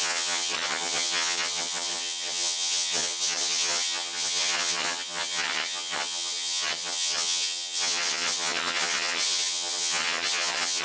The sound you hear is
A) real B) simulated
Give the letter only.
B